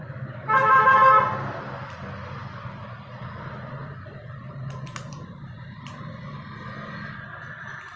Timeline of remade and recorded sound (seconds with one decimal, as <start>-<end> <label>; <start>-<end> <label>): 0.0-3.8 recorded; 3.8-4.5 remade; 4.5-8.0 recorded